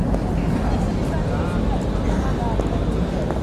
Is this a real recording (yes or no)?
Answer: yes